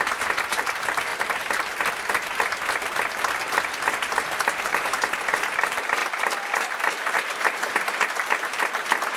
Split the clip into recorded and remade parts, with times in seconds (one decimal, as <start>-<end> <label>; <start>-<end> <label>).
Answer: 0.0-1.1 remade; 1.1-4.6 recorded; 4.6-9.2 remade